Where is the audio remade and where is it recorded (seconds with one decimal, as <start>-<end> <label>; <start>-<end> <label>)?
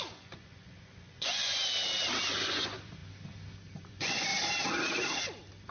0.0-1.6 remade; 1.6-2.4 recorded; 2.4-3.0 remade; 3.0-3.8 recorded; 3.8-4.3 remade; 4.3-5.7 recorded